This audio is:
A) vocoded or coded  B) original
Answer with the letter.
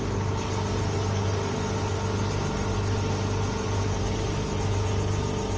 B